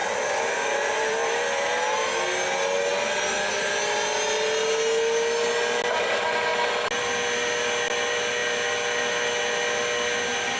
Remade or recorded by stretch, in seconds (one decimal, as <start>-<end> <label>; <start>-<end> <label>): 0.0-1.7 remade; 1.7-10.6 recorded